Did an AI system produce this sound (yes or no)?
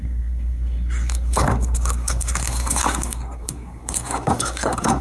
yes